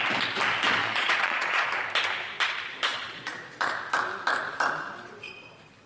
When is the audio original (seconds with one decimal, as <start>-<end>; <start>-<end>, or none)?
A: 0.0-0.8; 1.7-2.9; 3.7-5.9